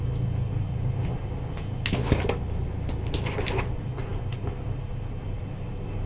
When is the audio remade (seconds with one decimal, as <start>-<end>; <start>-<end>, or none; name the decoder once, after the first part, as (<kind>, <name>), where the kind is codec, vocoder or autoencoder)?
none